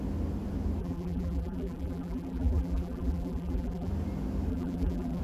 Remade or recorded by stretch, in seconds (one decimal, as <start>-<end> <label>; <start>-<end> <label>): 0.0-0.8 recorded; 0.8-3.9 remade; 3.9-4.5 recorded; 4.5-5.2 remade